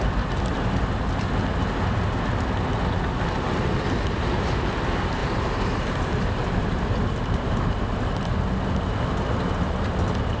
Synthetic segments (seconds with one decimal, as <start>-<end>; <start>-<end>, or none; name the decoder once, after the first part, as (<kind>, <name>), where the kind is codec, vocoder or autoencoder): 0.5-1.1 (vocoder, BigVGAN v2); 5.2-7.8